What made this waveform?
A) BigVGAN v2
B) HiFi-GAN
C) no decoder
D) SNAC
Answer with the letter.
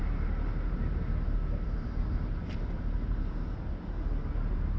A